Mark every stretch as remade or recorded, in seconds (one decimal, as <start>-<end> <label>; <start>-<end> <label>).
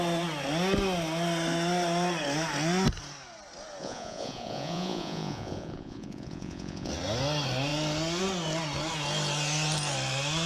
0.0-3.8 recorded; 3.8-6.9 remade; 6.9-10.5 recorded